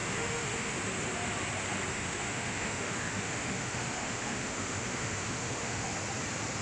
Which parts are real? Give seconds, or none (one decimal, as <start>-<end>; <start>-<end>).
0.8-1.9; 5.9-6.6